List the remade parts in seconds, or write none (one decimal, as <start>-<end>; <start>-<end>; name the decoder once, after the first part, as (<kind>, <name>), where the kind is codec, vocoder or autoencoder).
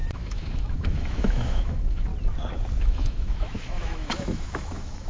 0.0-2.1 (autoencoder, DAC-VAE); 2.8-5.1